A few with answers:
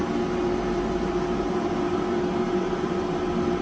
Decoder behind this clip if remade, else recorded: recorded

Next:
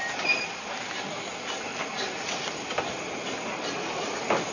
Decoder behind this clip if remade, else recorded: recorded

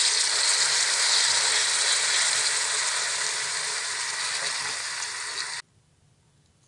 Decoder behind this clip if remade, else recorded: recorded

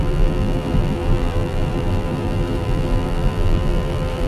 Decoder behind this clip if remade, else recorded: remade, vocoder, BigVGAN v2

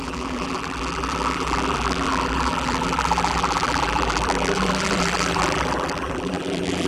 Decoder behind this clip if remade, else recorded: remade, vocoder, BigVGAN v2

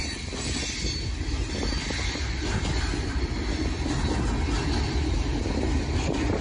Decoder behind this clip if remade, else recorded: recorded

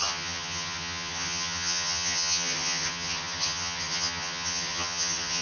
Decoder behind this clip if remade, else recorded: remade, vocoder, HiFi-GAN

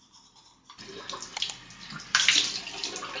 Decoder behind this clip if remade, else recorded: remade, vocoder, BigVGAN v2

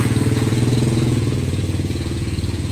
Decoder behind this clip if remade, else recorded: remade, vocoder, Vocos